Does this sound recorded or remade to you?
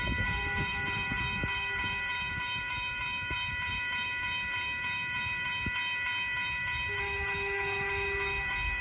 remade